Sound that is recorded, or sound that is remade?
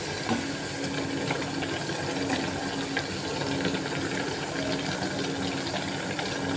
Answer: recorded